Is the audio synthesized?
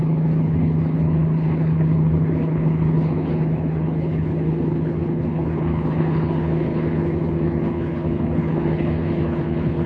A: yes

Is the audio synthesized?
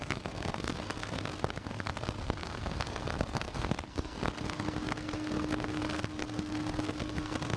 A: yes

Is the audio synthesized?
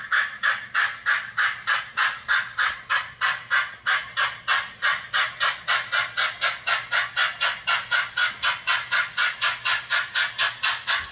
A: no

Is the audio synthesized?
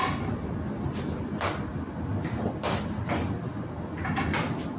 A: no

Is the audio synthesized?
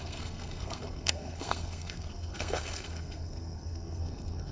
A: yes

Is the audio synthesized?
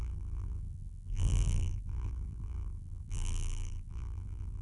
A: yes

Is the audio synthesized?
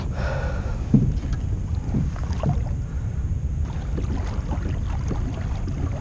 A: no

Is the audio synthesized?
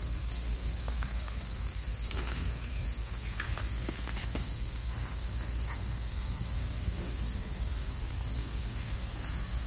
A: yes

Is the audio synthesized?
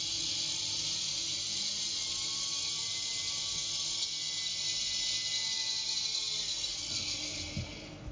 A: no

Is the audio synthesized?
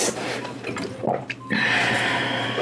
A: yes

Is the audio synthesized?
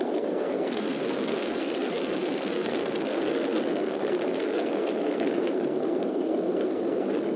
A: yes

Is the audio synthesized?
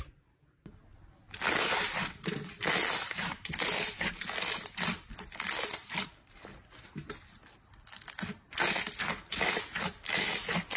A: no